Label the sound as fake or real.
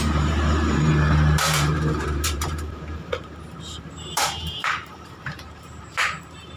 fake